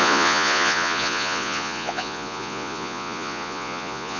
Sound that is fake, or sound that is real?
fake